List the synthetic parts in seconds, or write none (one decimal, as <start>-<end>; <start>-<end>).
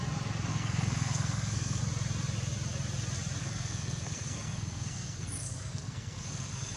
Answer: 0.5-1.8; 3.4-6.8